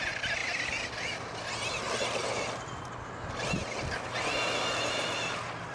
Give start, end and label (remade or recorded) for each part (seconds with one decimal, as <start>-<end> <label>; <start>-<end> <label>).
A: 0.0-5.7 recorded